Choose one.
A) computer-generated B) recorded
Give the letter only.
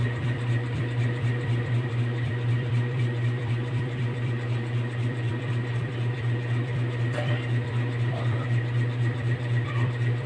A